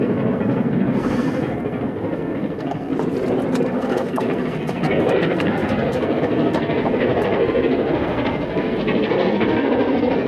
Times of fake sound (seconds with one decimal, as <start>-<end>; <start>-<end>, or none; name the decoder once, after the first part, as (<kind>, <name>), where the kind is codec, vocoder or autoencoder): 0.0-2.9 (codec, SNAC); 3.6-10.3